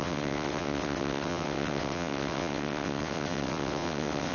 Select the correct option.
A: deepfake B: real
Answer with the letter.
A